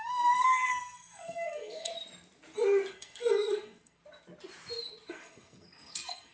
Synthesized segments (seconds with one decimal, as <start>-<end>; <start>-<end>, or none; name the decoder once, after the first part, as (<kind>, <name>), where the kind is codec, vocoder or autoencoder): 0.0-1.9 (codec, SNAC); 2.9-4.0; 5.1-6.3